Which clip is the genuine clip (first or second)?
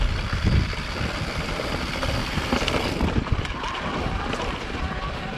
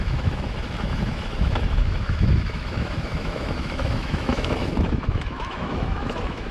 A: first